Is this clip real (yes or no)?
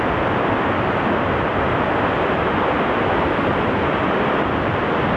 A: yes